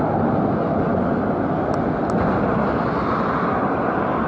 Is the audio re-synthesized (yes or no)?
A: no